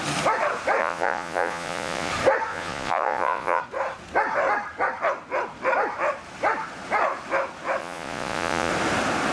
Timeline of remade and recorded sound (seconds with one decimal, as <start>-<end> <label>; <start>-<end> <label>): 0.0-0.8 recorded; 0.8-2.1 remade; 2.1-2.5 recorded; 2.5-3.6 remade; 3.6-7.8 recorded; 7.8-8.7 remade; 8.7-9.3 recorded